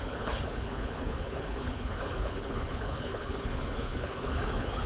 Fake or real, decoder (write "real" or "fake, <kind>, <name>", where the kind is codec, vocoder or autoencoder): fake, codec, HILCodec